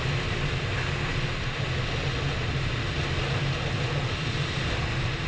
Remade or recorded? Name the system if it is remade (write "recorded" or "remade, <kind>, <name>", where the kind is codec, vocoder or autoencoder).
recorded